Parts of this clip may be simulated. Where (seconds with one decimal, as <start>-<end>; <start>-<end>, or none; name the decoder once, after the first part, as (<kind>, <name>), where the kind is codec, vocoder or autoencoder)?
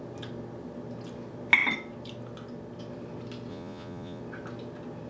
3.5-4.2 (vocoder, Vocos)